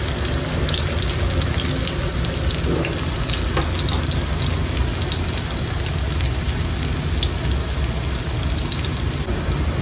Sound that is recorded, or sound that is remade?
recorded